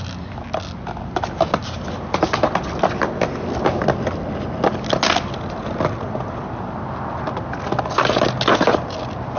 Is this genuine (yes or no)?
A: yes